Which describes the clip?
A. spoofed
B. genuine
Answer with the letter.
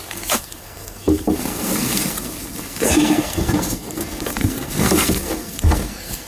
A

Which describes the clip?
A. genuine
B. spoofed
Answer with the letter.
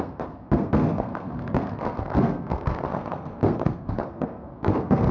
B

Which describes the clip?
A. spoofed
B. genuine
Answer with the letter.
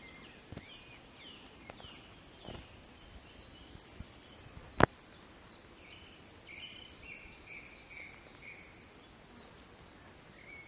B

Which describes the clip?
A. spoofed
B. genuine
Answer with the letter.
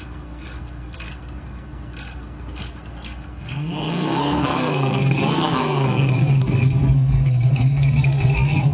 A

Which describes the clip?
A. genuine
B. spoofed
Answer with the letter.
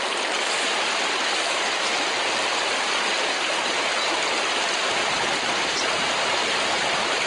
A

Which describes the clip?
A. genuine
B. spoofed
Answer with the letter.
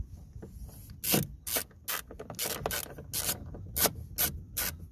A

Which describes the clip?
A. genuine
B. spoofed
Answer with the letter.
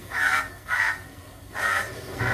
B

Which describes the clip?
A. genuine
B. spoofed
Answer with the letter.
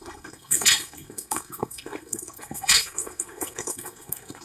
B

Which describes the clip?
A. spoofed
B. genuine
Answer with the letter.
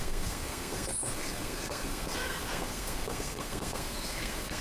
A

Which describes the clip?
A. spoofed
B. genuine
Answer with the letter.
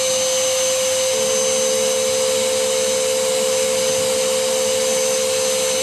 B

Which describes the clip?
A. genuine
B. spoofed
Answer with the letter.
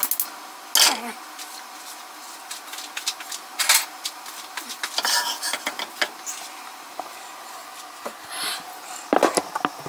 A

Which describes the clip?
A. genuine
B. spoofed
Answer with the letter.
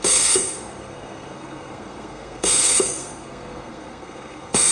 B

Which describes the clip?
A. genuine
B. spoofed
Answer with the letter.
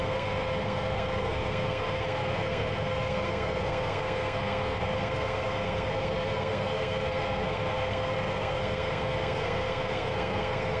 B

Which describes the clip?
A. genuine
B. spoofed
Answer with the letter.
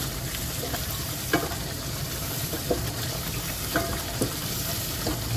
A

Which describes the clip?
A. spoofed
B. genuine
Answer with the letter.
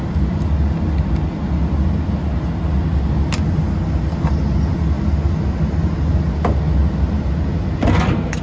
B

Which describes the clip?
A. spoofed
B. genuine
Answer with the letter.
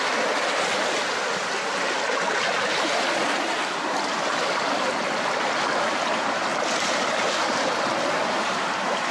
B